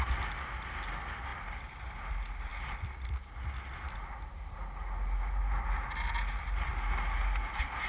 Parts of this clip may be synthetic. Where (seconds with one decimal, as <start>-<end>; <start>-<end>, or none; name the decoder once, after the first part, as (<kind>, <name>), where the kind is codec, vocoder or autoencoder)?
none